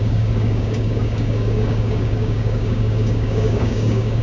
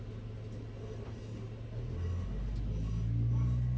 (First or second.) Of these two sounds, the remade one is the first